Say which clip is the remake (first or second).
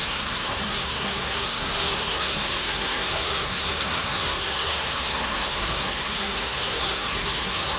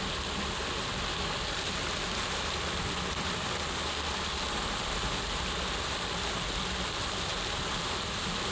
first